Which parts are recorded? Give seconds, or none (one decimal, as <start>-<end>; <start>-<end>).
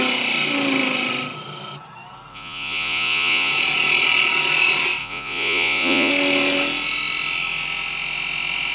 0.0-2.3; 3.5-5.0; 6.1-8.7